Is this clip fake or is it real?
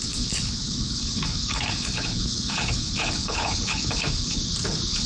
fake